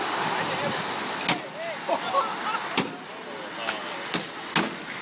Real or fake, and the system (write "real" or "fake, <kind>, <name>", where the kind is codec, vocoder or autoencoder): real